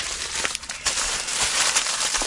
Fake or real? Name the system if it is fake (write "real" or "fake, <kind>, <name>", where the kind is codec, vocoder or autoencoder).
fake, vocoder, BigVGAN v2